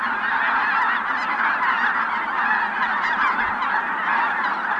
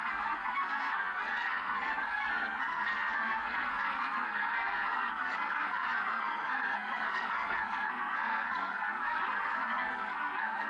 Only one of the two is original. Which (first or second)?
first